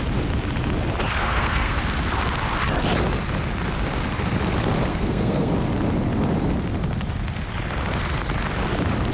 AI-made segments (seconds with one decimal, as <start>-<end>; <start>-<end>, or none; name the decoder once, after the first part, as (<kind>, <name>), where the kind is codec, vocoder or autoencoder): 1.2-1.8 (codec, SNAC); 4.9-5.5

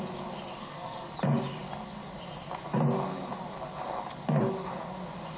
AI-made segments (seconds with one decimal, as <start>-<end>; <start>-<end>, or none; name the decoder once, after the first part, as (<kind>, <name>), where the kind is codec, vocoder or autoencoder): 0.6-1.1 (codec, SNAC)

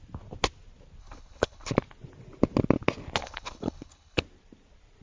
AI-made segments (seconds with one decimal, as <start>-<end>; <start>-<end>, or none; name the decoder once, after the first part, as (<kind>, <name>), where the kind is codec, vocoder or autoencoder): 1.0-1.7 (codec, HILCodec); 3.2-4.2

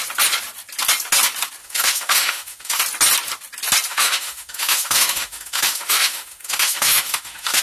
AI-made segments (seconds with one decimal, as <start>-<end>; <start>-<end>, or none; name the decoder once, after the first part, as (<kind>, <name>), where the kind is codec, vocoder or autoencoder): 1.6-2.8 (autoencoder, DAC-VAE); 3.9-7.6